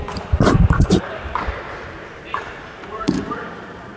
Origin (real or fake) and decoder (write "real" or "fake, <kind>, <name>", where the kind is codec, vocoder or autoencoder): fake, vocoder, BigVGAN v2